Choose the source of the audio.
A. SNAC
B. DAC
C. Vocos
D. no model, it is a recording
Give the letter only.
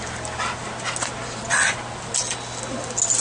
D